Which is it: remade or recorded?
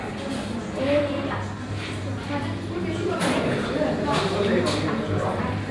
recorded